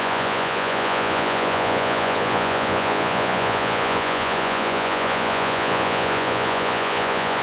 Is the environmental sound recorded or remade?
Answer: remade